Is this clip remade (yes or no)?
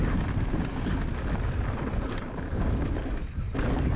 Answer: no